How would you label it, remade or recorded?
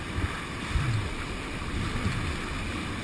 recorded